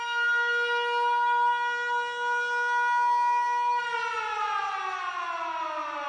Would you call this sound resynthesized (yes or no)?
no